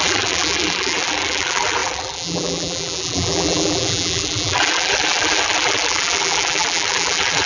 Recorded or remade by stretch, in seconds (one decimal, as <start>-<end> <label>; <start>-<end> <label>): 0.0-7.5 remade